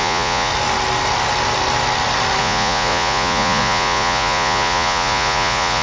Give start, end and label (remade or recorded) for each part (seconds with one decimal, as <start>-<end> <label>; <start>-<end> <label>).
0.0-0.5 remade; 0.5-2.4 recorded; 2.4-5.8 remade